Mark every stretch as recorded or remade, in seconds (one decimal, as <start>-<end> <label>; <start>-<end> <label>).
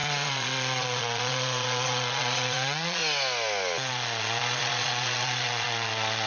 0.0-3.0 remade; 3.0-3.9 recorded; 3.9-6.3 remade